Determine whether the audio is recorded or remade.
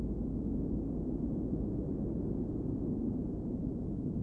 recorded